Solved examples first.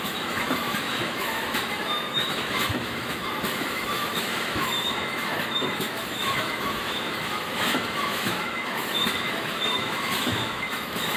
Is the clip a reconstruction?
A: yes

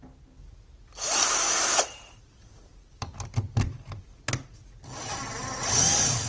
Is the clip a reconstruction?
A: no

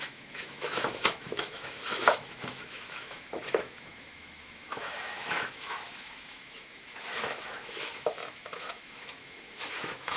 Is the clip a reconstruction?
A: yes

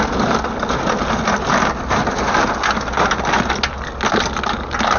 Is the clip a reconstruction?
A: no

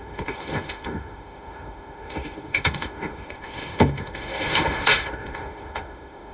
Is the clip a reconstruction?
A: yes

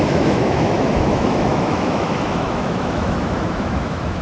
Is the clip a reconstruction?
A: yes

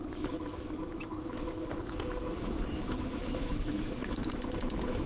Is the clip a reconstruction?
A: yes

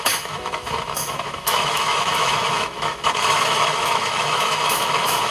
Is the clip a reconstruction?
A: yes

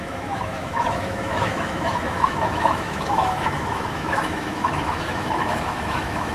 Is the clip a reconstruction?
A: yes